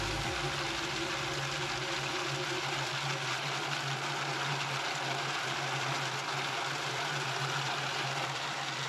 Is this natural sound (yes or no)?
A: yes